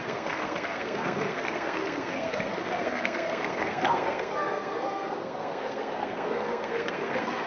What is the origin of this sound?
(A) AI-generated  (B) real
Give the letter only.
A